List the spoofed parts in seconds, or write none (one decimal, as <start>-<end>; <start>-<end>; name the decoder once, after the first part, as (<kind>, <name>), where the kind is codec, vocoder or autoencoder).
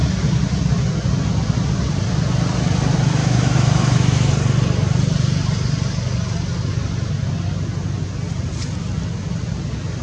3.2-4.3 (autoencoder, DAC-VAE)